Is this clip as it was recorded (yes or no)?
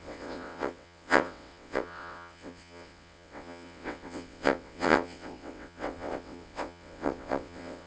no